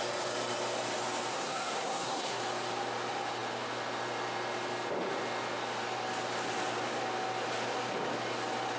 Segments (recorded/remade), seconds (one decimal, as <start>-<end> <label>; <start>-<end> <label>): 0.0-1.3 recorded; 1.3-2.4 remade; 2.4-8.8 recorded